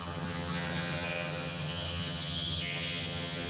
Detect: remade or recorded remade